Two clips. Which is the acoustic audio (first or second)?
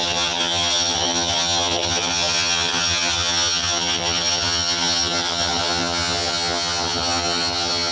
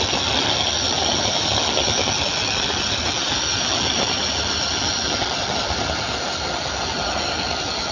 second